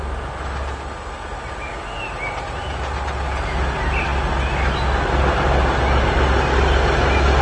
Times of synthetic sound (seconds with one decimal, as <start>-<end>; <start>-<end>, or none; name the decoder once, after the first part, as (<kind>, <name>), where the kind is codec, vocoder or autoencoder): none